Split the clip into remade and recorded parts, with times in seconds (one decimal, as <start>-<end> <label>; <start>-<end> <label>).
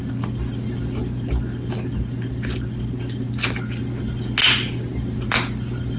0.0-6.0 recorded